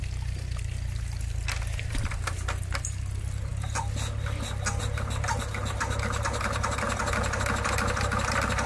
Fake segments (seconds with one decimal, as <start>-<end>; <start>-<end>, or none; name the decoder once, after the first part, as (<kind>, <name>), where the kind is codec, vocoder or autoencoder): none